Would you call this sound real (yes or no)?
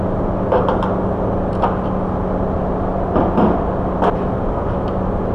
yes